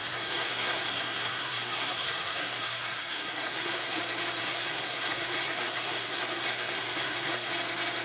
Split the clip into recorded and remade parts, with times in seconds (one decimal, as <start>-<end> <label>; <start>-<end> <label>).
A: 0.0-4.0 remade; 4.0-4.4 recorded; 4.4-7.5 remade; 7.5-8.0 recorded